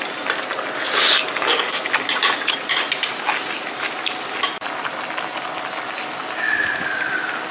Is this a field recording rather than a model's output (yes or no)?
yes